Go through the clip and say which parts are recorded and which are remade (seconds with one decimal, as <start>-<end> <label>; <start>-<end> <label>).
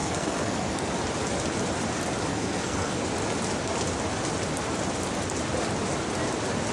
0.0-0.9 remade; 0.9-2.3 recorded; 2.3-3.0 remade; 3.0-6.7 recorded